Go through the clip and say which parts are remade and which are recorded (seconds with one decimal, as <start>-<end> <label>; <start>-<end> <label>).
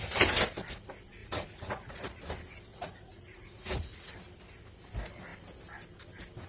0.0-1.2 recorded; 1.2-2.2 remade; 2.2-2.7 recorded; 2.7-4.1 remade; 4.1-6.5 recorded